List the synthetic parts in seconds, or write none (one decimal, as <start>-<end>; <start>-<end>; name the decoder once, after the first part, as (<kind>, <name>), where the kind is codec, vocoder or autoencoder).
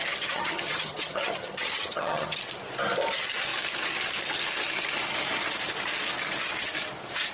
0.0-2.4 (vocoder, HiFi-GAN)